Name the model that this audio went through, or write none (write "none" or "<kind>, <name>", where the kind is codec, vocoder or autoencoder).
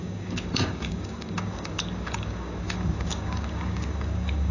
codec, DAC